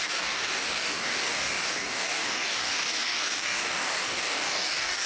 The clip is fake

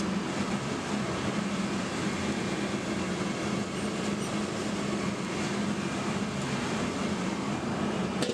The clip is real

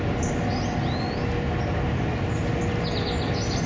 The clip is real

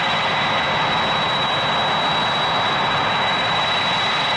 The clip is real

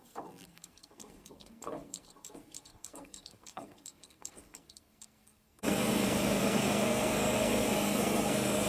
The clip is fake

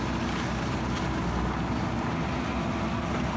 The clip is real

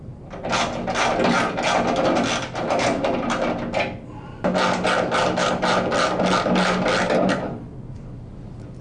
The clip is real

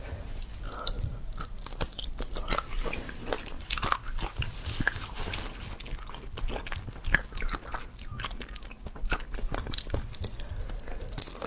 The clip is real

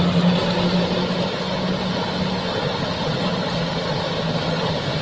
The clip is real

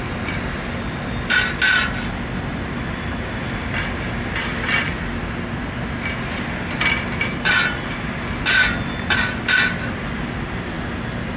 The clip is real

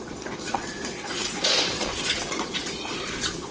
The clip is fake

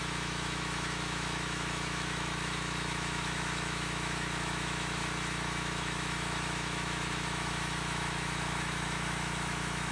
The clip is fake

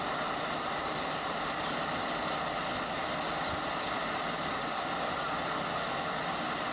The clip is real